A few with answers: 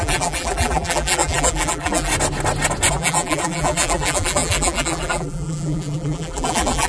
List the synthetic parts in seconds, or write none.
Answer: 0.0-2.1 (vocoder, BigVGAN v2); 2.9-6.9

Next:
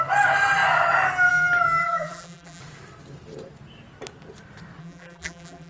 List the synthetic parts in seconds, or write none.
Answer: 1.8-2.6 (vocoder, BigVGAN v2); 4.8-5.7

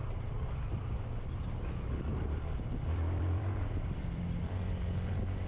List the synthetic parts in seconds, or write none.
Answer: 2.1-4.2 (vocoder, BigVGAN v2)

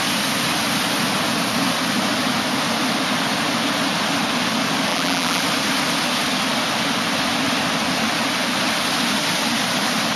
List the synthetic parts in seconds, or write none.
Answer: 4.9-5.4 (vocoder, BigVGAN v2)